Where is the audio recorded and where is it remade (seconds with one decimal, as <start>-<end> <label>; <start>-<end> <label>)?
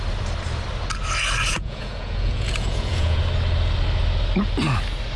0.0-1.5 recorded; 1.5-3.2 remade; 3.2-5.2 recorded